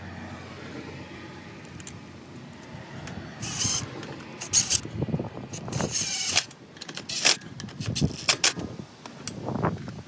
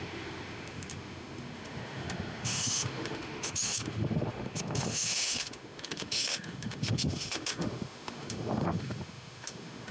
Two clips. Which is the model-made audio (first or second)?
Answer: second